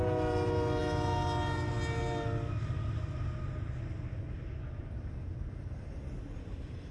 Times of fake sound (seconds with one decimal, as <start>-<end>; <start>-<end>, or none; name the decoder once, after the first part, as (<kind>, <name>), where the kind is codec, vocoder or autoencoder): none

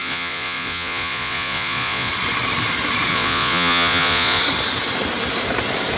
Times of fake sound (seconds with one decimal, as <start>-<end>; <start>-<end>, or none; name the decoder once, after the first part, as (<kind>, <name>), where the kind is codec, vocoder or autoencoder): 0.0-2.1 (vocoder, Vocos); 3.1-4.4

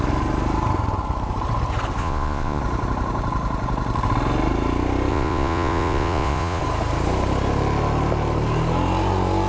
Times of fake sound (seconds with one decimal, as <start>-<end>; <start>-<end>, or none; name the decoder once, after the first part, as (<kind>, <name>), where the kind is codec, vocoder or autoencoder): 2.0-2.6 (vocoder, Vocos); 5.1-6.6

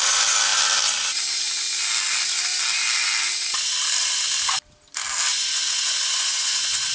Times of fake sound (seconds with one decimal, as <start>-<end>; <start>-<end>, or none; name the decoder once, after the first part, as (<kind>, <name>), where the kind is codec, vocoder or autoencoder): 5.3-6.9 (vocoder, Vocos)

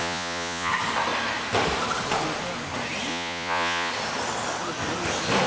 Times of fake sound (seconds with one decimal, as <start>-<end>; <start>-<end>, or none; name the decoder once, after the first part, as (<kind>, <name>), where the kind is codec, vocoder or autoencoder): 0.0-0.7 (vocoder, Vocos); 3.1-3.9